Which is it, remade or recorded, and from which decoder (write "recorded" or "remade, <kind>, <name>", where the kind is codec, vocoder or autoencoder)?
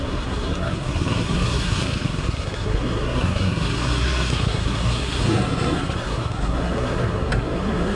remade, codec, SNAC